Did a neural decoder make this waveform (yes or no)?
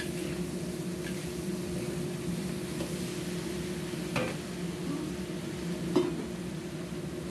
no